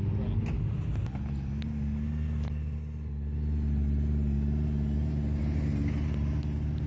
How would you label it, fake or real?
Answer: real